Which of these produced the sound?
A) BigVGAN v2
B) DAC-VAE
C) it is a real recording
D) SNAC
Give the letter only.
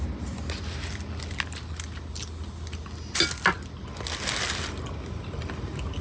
C